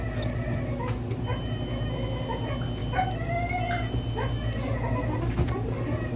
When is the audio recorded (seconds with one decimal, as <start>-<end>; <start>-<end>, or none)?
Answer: 0.0-6.2